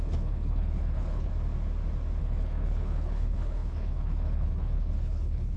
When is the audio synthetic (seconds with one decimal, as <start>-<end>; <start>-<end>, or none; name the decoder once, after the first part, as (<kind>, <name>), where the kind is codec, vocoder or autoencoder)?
0.0-1.3 (codec, HILCodec); 2.2-5.6